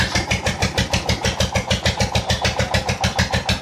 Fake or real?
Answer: fake